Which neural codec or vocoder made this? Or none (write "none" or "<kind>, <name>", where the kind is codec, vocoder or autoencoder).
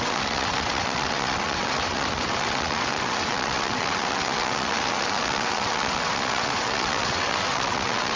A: vocoder, WaveNeXt